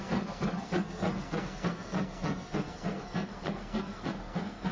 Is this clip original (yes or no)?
no